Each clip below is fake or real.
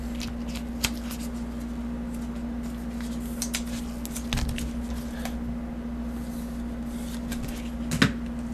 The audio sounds real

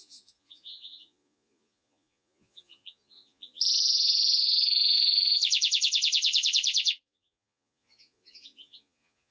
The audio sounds fake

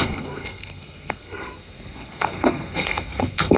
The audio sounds fake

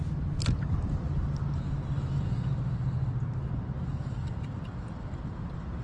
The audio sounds real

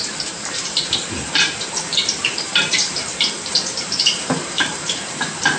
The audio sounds fake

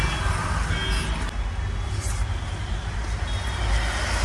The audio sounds real